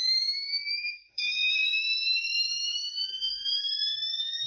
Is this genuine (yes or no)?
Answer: no